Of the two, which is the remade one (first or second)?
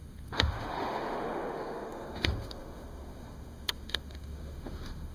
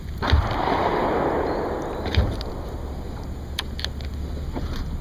first